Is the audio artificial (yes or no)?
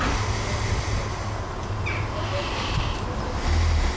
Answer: no